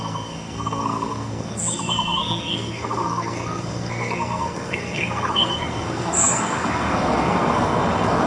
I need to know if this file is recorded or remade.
remade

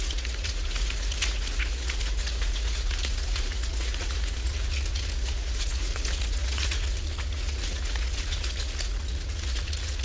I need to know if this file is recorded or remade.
remade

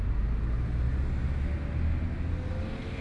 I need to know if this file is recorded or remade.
recorded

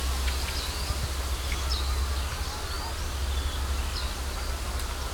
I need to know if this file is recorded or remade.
recorded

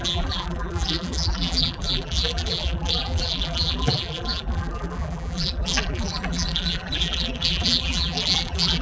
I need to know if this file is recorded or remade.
remade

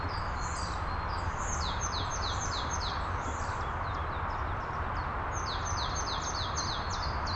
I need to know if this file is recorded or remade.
recorded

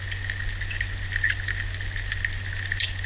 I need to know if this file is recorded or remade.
recorded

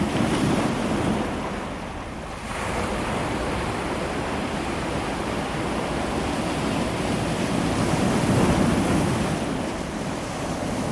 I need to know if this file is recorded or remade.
recorded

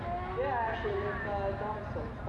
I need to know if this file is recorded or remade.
recorded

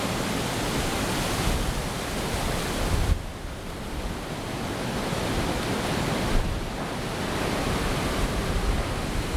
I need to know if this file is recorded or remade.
recorded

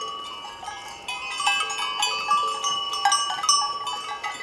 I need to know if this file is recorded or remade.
recorded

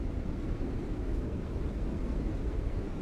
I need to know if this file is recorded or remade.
remade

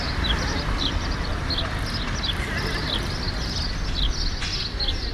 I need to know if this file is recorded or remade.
recorded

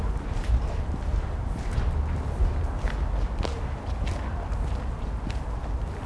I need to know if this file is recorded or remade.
recorded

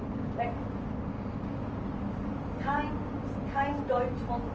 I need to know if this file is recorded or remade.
recorded